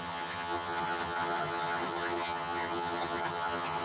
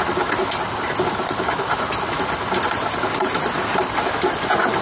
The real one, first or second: second